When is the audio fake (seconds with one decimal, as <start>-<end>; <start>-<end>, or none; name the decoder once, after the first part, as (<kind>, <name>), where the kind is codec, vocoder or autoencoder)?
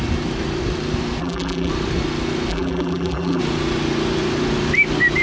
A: 1.2-1.7 (vocoder, BigVGAN v2); 2.5-3.4